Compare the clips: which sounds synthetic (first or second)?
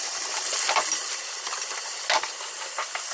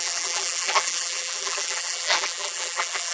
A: second